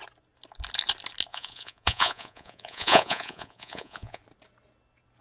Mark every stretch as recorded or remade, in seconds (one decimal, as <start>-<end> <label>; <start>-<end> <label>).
0.0-1.3 recorded; 1.3-4.2 remade; 4.2-5.2 recorded